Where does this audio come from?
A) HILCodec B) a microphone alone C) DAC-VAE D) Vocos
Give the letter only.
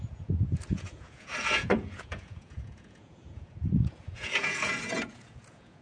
D